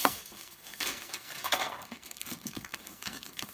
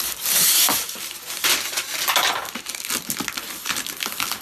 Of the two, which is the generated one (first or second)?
first